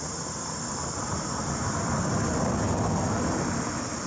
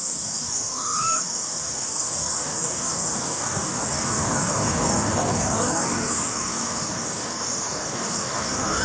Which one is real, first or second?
first